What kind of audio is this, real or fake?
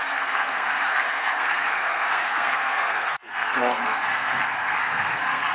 fake